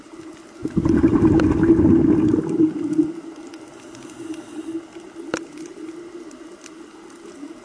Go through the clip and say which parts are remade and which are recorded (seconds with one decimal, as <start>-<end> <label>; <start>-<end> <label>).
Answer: 0.0-7.6 recorded